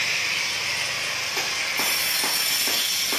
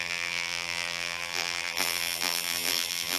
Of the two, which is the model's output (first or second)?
second